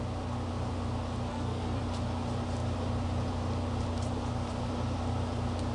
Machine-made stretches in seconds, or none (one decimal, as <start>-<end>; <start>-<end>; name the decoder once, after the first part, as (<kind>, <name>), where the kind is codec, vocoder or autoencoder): 1.3-1.8 (codec, SNAC)